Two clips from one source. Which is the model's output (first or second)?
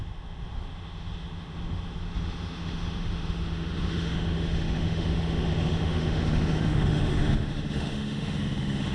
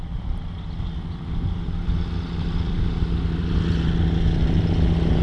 first